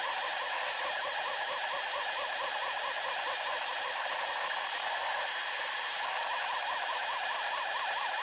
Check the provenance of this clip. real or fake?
real